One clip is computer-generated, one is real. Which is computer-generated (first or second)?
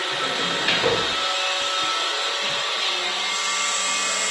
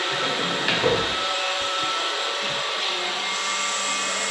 second